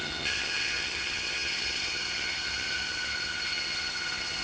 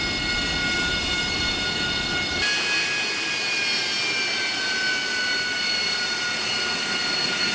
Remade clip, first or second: first